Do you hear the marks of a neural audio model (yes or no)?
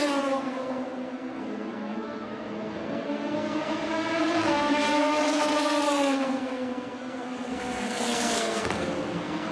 yes